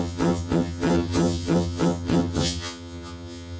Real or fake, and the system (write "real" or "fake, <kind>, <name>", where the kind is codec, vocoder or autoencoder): fake, vocoder, HiFi-GAN